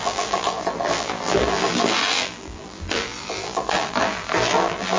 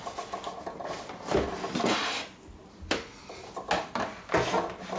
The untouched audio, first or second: second